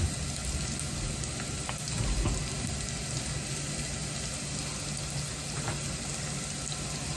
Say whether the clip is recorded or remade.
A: recorded